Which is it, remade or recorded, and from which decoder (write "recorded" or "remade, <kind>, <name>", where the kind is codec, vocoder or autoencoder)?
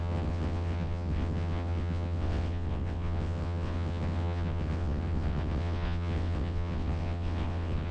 remade, vocoder, WaveNeXt